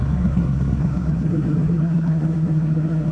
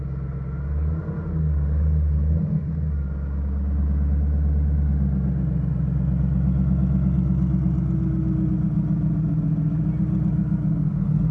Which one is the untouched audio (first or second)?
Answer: second